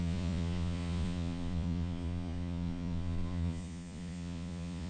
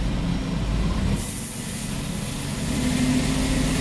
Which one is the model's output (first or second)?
first